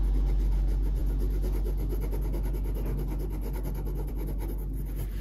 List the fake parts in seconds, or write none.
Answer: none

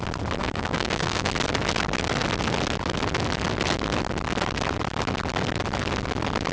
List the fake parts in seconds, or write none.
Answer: 0.4-1.3 (codec, DAC)